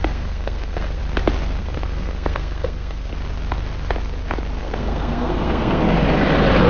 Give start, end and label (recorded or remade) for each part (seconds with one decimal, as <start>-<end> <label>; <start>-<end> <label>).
0.0-1.0 remade; 1.0-1.6 recorded; 1.6-3.1 remade; 3.1-4.6 recorded; 4.6-5.8 remade; 5.8-6.7 recorded